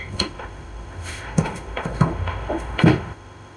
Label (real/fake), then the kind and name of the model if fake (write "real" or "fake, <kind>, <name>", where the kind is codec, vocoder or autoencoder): fake, autoencoder, DAC-VAE